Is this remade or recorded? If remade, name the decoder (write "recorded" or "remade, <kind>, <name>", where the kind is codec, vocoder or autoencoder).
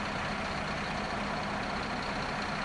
recorded